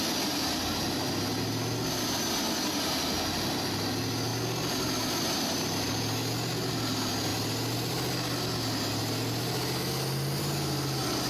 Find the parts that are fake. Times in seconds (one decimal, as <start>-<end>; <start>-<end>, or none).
none